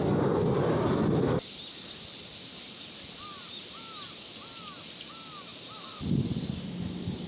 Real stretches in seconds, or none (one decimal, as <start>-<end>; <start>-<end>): 0.0-7.3